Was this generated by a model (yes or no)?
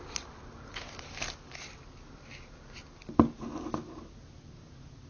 no